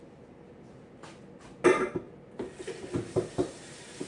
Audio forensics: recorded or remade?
recorded